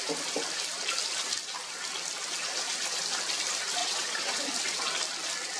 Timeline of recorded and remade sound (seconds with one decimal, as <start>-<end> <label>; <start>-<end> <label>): 0.0-3.8 recorded; 3.8-4.4 remade; 4.4-5.6 recorded